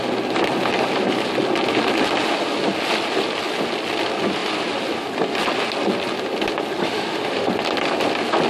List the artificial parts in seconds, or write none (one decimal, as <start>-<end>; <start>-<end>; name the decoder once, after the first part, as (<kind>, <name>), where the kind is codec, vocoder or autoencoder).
6.8-7.5 (autoencoder, DAC-VAE)